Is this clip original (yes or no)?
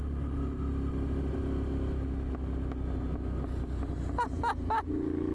yes